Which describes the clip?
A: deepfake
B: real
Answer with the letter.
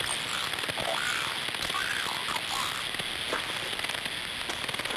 B